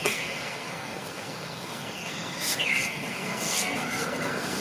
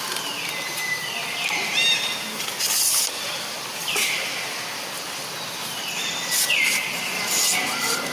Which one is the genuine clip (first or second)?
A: second